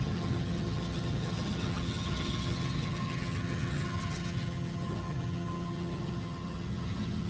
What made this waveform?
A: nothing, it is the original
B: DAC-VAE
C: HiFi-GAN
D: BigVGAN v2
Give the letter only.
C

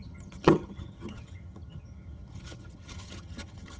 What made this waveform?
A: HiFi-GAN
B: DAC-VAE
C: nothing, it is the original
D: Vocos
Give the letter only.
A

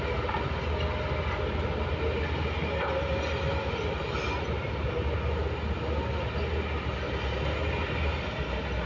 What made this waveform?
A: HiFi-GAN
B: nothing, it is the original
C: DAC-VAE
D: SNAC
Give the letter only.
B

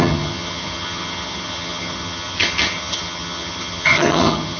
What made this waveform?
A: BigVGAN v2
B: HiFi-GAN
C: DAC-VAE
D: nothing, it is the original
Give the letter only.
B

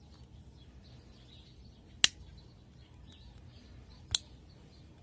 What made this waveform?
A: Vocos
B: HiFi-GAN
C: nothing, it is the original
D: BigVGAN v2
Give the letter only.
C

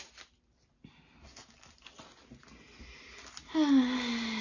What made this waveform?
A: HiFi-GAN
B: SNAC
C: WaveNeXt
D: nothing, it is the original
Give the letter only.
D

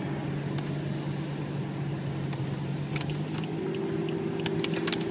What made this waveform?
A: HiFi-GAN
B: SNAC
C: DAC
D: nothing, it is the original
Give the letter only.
D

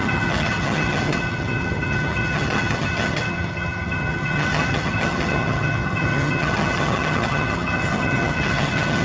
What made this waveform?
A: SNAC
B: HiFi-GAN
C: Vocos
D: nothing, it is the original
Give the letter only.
B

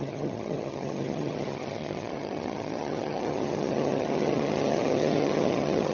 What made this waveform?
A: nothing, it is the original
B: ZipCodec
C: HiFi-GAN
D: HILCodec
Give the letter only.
C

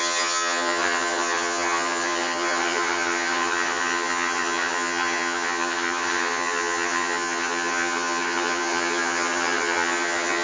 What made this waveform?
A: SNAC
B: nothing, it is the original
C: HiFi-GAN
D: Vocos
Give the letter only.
C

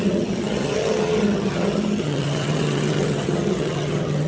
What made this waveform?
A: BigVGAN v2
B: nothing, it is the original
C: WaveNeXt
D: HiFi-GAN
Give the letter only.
D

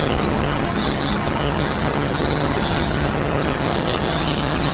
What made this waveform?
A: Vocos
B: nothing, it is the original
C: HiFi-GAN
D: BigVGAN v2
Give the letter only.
C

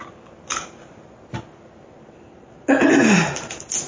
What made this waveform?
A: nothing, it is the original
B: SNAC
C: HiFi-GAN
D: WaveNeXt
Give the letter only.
A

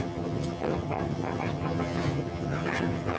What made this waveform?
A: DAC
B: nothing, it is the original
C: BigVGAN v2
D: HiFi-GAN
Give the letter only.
D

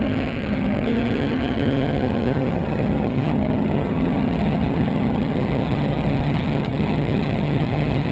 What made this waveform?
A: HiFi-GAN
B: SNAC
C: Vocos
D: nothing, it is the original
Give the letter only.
A